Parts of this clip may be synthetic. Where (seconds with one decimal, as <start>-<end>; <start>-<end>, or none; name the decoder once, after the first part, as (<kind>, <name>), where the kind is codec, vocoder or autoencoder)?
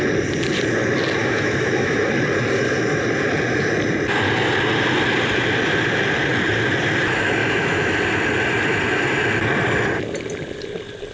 1.2-2.1 (autoencoder, DAC-VAE); 7.4-8.0